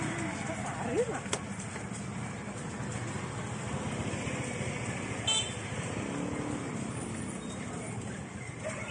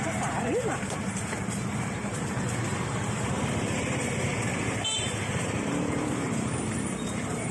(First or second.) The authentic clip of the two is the first